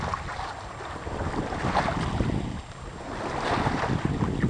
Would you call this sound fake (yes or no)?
no